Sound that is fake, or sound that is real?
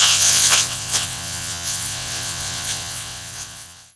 fake